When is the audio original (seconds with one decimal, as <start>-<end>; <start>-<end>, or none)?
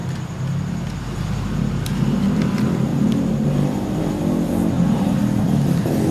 0.0-2.9; 4.1-6.1